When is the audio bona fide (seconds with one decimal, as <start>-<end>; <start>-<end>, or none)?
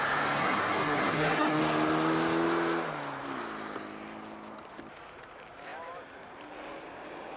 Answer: 0.0-0.4; 1.6-7.4